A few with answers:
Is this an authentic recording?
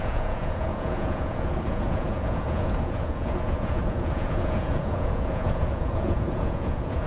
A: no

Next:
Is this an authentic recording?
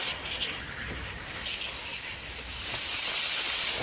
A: yes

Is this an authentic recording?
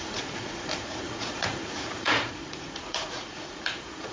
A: no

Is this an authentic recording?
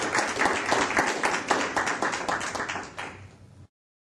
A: yes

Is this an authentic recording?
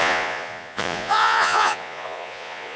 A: no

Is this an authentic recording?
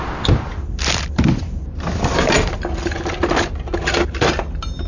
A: yes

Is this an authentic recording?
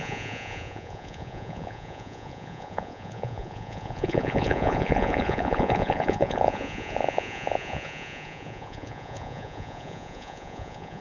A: no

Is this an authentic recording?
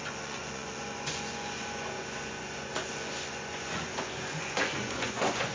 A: no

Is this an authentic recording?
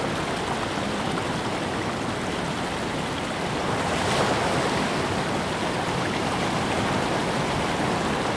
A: yes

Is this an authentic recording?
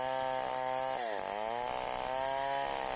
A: yes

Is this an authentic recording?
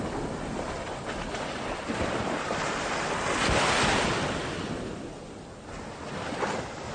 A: yes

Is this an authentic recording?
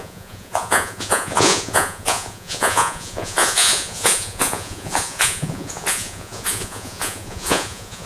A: no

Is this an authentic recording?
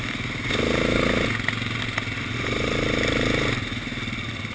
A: yes